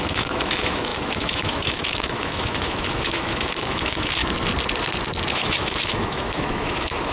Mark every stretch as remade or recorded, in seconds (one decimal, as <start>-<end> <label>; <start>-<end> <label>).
0.0-4.2 remade; 4.2-5.3 recorded; 5.3-7.1 remade